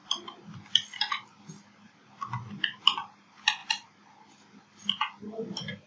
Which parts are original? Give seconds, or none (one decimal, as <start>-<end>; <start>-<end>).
0.0-5.9